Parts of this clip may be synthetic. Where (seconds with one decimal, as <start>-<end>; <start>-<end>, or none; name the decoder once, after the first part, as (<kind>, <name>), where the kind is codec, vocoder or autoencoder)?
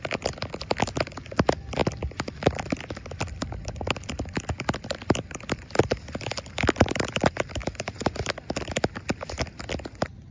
0.0-7.6 (vocoder, BigVGAN v2); 8.9-10.3